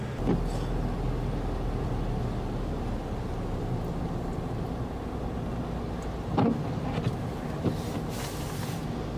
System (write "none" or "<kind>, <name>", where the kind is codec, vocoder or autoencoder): none